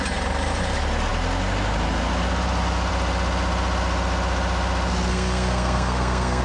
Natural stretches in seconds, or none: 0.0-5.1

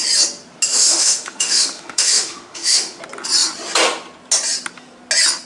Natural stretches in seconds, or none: 0.0-0.7; 3.0-5.5

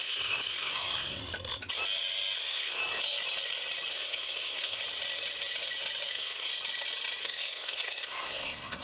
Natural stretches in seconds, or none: 1.2-2.4; 2.8-3.9; 4.8-6.1; 6.5-7.2